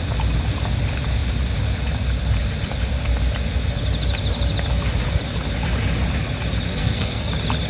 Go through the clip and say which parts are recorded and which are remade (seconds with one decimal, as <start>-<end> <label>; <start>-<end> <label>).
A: 0.0-6.7 recorded; 6.7-7.3 remade; 7.3-7.7 recorded